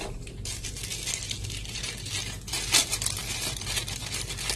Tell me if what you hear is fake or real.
real